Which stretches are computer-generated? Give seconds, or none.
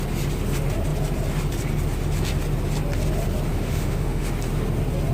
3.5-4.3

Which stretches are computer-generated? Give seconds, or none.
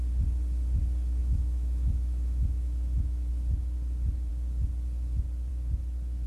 1.2-3.3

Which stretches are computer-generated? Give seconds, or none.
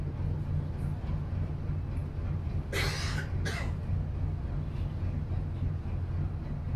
none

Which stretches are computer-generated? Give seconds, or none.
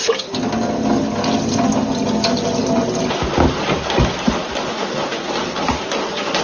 none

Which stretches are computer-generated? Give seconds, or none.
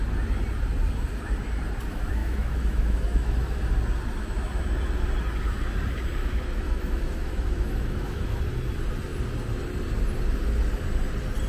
2.2-3.6; 6.2-8.4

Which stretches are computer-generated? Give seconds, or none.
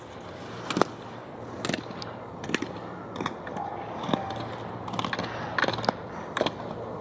none